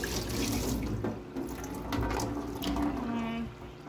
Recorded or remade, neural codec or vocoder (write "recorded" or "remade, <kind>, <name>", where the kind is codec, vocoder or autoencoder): recorded